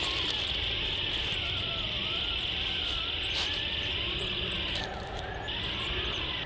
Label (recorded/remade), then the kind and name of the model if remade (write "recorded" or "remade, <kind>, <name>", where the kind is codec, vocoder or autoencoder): recorded